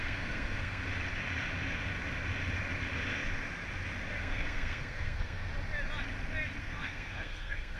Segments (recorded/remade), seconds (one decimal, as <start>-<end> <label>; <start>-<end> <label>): 0.0-0.8 remade; 0.8-4.2 recorded; 4.2-5.5 remade; 5.5-6.6 recorded; 6.6-7.8 remade